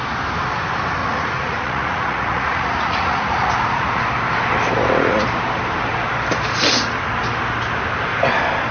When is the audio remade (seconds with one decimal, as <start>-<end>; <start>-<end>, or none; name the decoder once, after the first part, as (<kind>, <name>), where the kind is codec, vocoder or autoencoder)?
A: 1.0-4.0 (vocoder, Vocos)